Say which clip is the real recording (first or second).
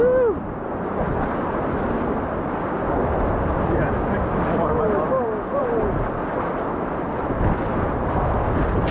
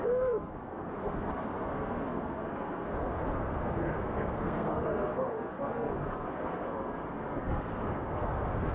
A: first